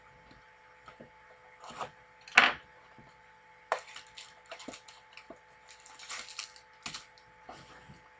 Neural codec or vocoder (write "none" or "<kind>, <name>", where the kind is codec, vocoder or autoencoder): none